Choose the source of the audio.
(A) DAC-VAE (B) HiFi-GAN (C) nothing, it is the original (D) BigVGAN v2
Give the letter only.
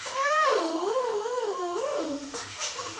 A